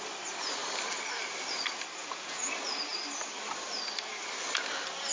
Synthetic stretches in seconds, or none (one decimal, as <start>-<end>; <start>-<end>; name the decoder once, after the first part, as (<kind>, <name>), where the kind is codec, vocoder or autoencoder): 2.0-2.5 (vocoder, Vocos)